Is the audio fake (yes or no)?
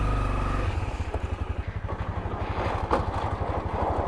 no